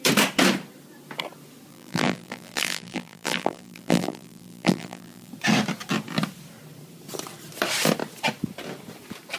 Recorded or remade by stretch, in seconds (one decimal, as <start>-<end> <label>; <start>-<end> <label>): 0.0-1.7 recorded; 1.7-5.3 remade; 5.3-9.4 recorded